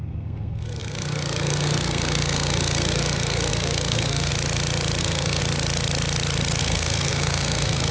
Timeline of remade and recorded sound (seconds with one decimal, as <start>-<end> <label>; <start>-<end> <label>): 0.0-4.3 remade; 4.3-5.0 recorded; 5.0-5.4 remade; 5.4-6.6 recorded; 6.6-7.9 remade